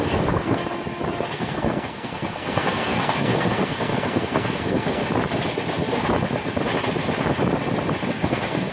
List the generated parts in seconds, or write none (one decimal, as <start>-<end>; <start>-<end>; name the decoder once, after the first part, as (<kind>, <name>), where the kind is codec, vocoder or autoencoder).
0.0-0.6 (codec, SNAC); 1.3-5.0; 8.1-8.7